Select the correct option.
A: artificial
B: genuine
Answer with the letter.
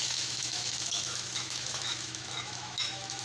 A